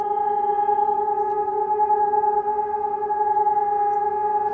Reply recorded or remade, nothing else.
recorded